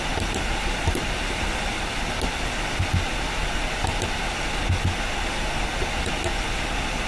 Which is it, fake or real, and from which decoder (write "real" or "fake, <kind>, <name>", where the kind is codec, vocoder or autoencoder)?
real